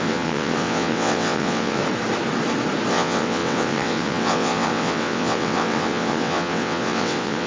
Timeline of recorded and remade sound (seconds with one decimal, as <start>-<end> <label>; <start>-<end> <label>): 0.0-1.8 remade; 1.8-2.9 recorded; 2.9-7.5 remade